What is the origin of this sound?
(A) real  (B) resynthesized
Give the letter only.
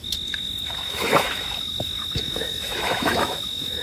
B